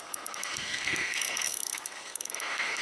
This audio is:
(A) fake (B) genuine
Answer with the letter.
A